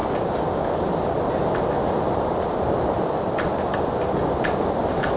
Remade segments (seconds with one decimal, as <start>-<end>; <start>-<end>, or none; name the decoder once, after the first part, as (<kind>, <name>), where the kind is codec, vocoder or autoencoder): none